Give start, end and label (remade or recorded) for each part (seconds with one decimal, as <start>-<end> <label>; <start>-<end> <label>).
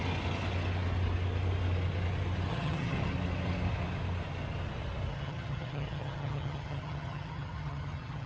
0.0-2.5 recorded; 2.5-3.1 remade; 3.1-5.1 recorded; 5.1-8.3 remade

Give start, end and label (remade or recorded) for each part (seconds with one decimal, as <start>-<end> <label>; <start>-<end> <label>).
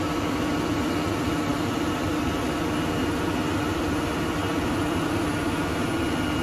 0.0-6.4 recorded